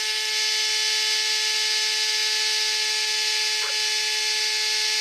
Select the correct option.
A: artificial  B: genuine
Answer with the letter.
B